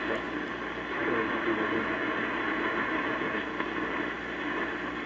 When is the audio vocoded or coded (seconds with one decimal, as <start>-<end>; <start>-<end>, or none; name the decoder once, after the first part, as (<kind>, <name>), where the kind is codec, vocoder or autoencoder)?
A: none